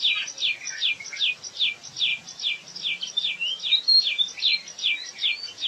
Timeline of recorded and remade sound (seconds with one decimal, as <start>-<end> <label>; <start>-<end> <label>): 0.0-5.7 recorded